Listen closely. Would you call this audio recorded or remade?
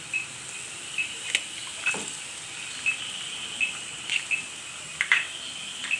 recorded